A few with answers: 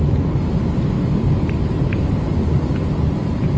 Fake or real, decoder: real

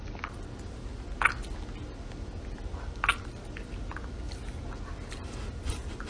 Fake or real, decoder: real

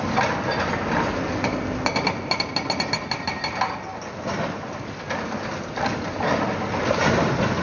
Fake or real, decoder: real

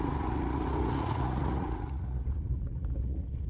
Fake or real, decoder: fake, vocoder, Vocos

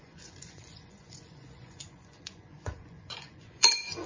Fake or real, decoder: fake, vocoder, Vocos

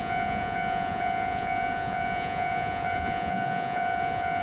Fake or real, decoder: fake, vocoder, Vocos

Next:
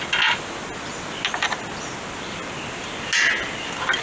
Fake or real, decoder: real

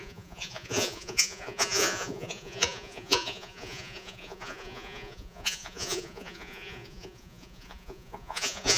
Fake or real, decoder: fake, vocoder, Vocos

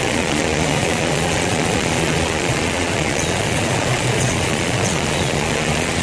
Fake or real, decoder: fake, vocoder, Vocos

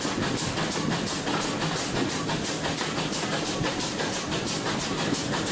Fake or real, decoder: real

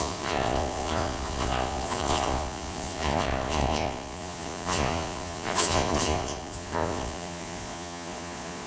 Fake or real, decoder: fake, vocoder, Vocos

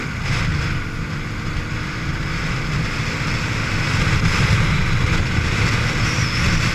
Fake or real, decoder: real